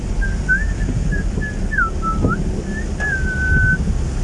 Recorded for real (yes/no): yes